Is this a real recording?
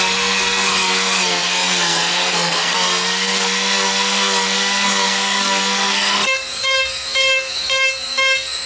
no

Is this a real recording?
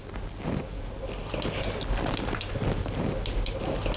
yes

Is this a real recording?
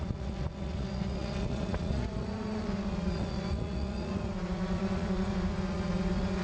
no